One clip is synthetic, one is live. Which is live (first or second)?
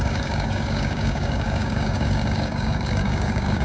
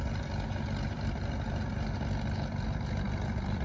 second